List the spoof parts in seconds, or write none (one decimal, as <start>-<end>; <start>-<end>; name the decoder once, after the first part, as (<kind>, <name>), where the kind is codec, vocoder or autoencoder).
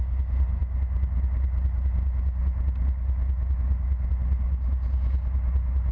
none